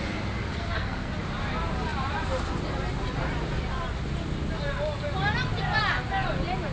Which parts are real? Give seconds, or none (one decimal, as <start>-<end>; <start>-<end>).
0.0-0.5; 1.1-6.7